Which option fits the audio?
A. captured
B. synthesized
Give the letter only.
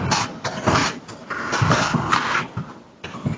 A